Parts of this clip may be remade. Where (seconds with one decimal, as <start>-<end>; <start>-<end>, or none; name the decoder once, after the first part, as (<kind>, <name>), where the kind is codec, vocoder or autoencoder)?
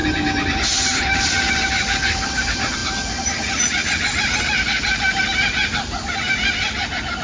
0.0-7.2 (vocoder, BigVGAN v2)